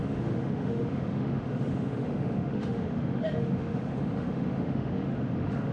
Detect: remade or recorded remade